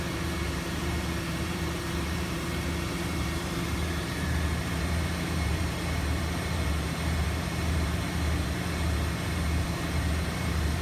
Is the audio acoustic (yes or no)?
no